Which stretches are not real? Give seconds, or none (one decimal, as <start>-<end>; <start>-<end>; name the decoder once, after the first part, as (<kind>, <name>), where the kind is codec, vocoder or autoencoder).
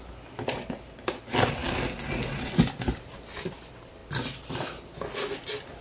none